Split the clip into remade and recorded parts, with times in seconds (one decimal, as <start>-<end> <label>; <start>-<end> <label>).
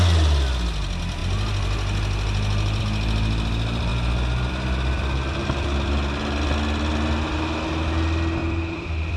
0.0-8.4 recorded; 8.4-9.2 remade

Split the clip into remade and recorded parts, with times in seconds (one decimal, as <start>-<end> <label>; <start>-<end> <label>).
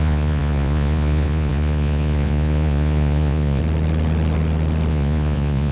0.0-3.6 remade; 3.6-4.9 recorded; 4.9-5.7 remade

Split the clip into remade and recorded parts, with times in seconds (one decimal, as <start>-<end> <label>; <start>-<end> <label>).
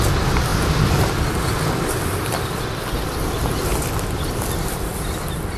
0.0-3.7 recorded; 3.7-4.7 remade; 4.7-5.6 recorded